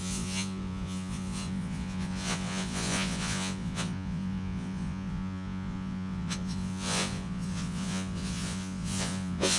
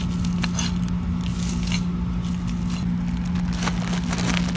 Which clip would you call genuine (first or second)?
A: second